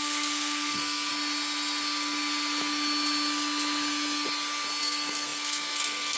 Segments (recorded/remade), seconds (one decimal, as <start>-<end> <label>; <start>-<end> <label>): 0.0-1.1 remade; 1.1-4.8 recorded; 4.8-6.2 remade